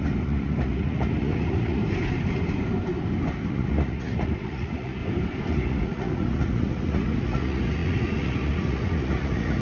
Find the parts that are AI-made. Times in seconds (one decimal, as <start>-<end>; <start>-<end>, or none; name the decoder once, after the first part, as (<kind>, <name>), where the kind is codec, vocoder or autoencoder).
0.0-1.8 (vocoder, Vocos); 3.5-5.0; 5.5-9.6